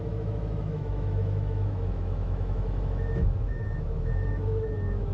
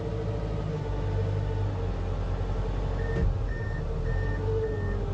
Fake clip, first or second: first